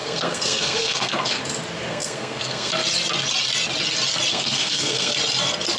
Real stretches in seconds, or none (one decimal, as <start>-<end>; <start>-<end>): 1.4-1.9; 2.7-4.3; 5.1-5.8